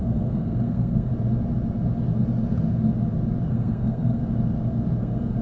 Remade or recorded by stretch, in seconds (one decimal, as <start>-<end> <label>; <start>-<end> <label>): 0.0-1.1 remade; 1.1-3.5 recorded; 3.5-4.2 remade; 4.2-5.0 recorded; 5.0-5.4 remade